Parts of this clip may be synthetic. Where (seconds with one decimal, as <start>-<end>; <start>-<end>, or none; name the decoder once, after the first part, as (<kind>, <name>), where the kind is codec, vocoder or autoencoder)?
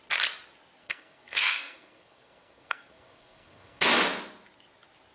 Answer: 0.8-3.9 (codec, SNAC)